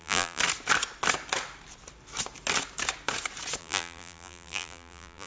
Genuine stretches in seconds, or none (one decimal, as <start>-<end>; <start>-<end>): 0.4-3.6